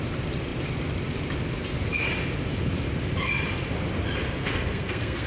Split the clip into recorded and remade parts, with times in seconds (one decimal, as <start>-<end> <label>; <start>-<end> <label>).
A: 0.0-4.4 recorded; 4.4-5.3 remade